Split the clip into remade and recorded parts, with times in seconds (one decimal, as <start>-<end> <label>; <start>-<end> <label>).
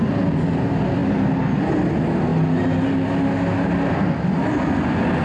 0.0-5.2 recorded